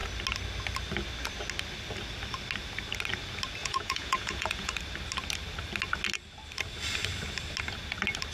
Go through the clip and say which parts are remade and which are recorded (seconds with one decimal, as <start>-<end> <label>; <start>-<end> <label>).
0.0-3.6 recorded; 3.6-4.7 remade; 4.7-8.3 recorded